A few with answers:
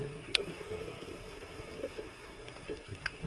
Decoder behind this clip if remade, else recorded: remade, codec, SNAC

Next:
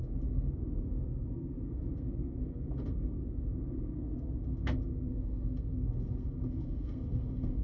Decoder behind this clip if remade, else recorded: remade, codec, SNAC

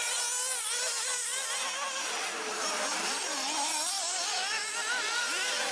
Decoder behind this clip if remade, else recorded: recorded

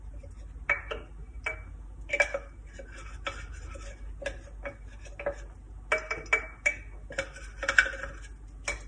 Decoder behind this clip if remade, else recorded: recorded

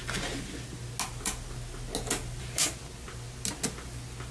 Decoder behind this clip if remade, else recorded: recorded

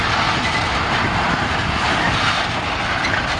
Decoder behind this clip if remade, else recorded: recorded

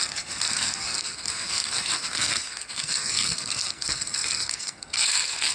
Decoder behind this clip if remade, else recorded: remade, codec, SNAC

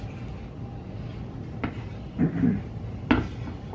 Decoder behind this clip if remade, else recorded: recorded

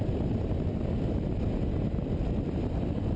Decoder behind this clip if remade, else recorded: recorded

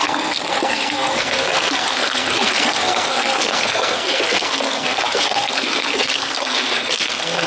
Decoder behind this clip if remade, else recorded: remade, codec, SNAC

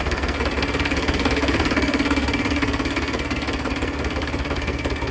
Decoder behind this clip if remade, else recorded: remade, codec, SNAC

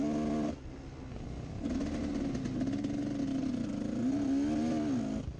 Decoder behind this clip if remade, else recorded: recorded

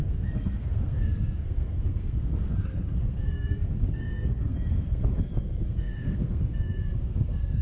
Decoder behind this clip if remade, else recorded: remade, codec, SNAC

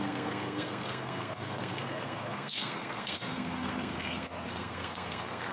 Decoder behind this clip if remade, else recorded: remade, codec, SNAC